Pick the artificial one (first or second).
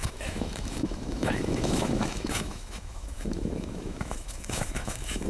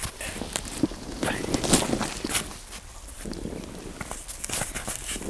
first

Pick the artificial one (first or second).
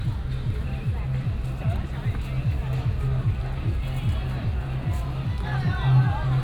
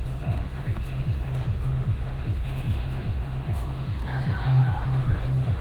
second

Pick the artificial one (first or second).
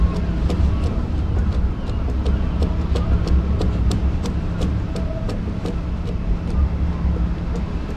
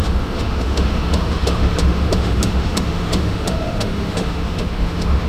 second